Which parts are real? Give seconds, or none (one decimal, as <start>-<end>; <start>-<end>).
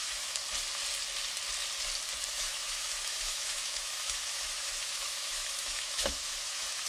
0.4-2.3